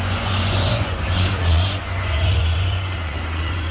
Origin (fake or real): fake